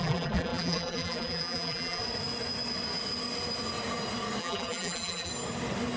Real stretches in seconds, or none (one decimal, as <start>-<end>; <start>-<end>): 2.0-4.4; 5.3-6.0